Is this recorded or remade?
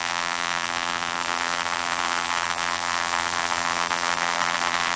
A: remade